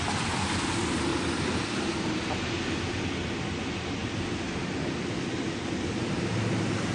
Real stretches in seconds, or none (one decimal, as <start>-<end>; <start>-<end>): 0.0-1.1; 2.3-6.9